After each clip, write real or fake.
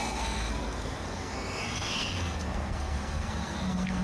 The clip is fake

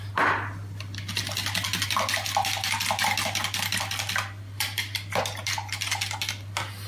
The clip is real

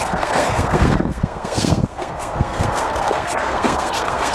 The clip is fake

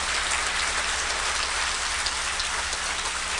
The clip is real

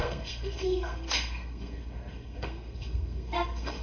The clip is fake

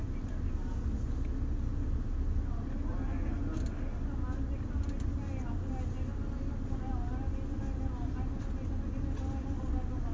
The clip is real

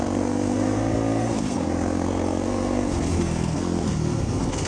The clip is fake